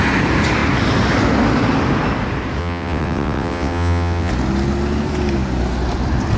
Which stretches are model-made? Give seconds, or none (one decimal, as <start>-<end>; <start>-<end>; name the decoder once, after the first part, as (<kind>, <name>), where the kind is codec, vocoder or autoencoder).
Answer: 2.6-4.3 (vocoder, WaveNeXt)